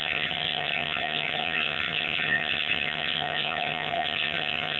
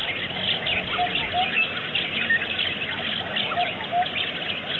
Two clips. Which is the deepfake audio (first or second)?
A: first